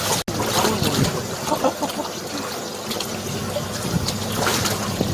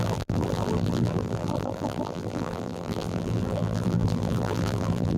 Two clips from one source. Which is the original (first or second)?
first